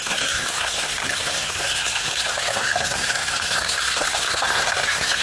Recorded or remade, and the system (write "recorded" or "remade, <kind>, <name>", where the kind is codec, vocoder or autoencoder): remade, codec, SNAC